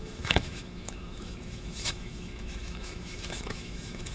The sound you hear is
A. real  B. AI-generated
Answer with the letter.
B